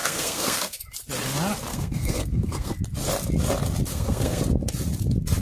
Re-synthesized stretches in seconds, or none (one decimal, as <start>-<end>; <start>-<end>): 0.0-0.8; 1.7-2.7; 3.9-4.4